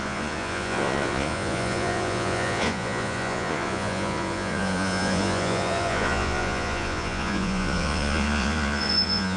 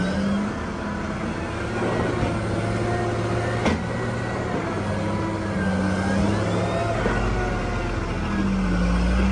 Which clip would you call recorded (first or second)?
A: second